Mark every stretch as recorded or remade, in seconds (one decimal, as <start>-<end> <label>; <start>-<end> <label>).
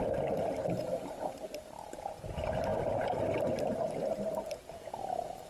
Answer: 0.0-5.5 recorded